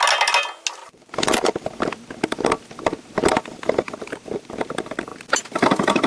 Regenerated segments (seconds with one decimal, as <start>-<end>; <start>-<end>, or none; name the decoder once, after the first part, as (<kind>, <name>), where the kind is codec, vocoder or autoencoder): 0.8-1.7 (vocoder, BigVGAN v2); 3.3-4.0